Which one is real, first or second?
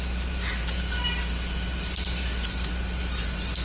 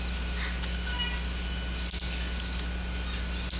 second